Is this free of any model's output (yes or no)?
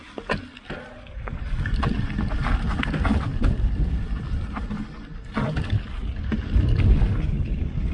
yes